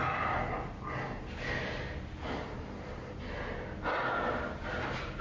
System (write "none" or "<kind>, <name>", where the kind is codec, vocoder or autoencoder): none